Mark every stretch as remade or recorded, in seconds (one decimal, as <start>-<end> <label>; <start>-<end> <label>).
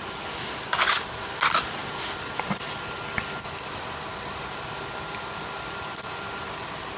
0.0-7.0 recorded